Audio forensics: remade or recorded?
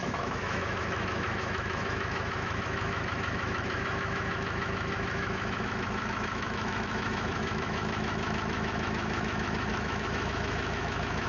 remade